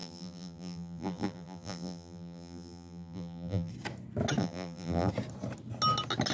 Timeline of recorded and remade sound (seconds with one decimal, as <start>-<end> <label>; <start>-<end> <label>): 0.0-3.7 remade; 3.7-4.4 recorded; 4.4-5.1 remade; 5.1-6.3 recorded